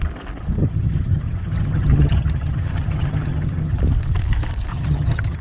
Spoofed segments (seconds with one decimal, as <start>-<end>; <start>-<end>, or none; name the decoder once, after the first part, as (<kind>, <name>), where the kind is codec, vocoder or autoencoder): 0.6-3.8 (vocoder, HiFi-GAN); 4.7-5.4